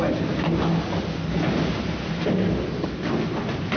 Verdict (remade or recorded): recorded